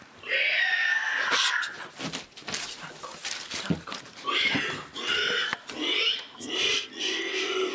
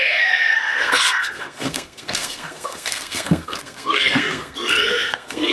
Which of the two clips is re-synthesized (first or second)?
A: second